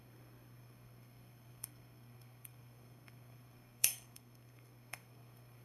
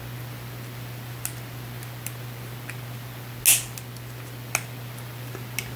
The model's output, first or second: first